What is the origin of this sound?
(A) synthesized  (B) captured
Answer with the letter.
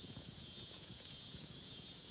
A